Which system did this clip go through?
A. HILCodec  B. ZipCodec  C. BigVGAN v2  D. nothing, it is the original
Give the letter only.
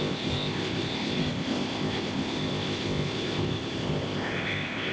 B